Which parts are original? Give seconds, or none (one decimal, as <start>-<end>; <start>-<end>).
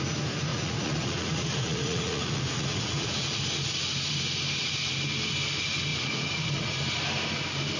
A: 0.0-0.5; 3.4-5.9; 6.8-7.8